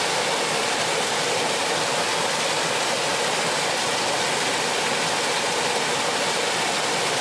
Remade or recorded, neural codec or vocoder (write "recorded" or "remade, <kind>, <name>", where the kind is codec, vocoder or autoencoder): recorded